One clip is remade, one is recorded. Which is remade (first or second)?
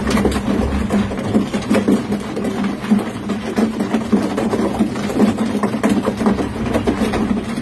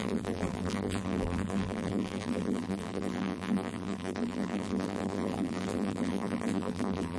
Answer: second